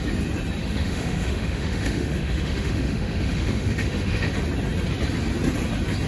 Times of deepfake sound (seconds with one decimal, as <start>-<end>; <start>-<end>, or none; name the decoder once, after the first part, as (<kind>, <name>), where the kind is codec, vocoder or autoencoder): 0.6-4.3 (autoencoder, DAC-VAE)